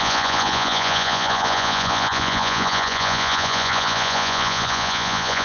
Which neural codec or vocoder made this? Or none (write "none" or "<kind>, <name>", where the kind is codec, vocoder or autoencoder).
vocoder, Vocos